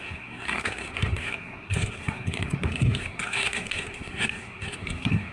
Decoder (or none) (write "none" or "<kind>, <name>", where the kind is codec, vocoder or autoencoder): codec, SNAC